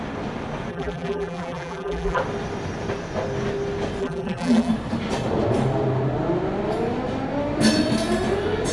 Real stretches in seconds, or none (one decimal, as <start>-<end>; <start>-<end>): 0.0-0.7; 2.2-4.0; 4.7-8.7